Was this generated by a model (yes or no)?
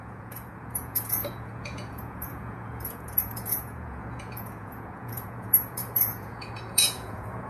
yes